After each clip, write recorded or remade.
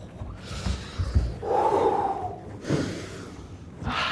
remade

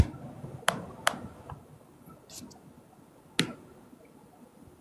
recorded